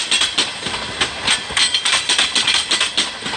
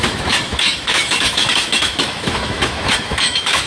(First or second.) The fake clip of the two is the second